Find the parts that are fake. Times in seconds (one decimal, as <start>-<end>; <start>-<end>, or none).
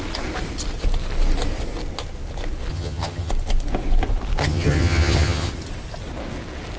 2.7-3.3; 4.4-5.5